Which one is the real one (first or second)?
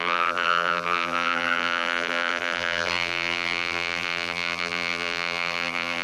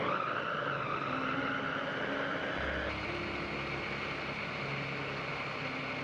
second